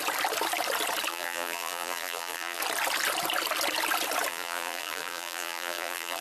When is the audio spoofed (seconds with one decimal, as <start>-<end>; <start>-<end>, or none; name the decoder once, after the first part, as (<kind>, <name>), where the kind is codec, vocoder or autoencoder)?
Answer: 1.1-2.6 (vocoder, BigVGAN v2); 4.3-6.2